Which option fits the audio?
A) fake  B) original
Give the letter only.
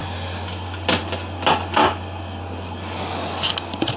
B